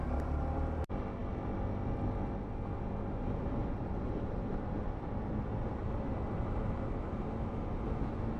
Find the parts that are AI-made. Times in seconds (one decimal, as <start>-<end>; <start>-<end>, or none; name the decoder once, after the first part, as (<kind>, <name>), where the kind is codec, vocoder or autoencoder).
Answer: 3.6-4.7 (vocoder, BigVGAN v2); 5.8-7.6